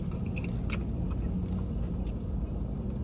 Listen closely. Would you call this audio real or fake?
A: real